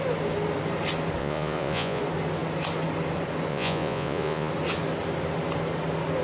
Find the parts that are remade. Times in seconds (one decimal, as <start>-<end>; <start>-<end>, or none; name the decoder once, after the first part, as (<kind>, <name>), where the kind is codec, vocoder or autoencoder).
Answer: 1.2-2.0 (vocoder, Vocos); 3.5-4.5